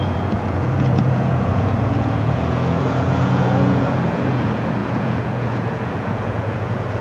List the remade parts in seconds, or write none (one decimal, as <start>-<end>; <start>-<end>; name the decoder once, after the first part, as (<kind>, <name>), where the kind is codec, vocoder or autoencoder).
0.0-7.0 (vocoder, Vocos)